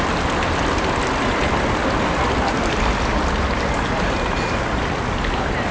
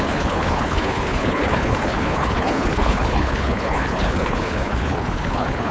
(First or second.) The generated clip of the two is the second